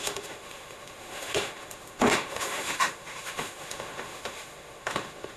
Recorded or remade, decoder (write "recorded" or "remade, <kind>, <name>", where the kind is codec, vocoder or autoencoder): remade, autoencoder, DAC-VAE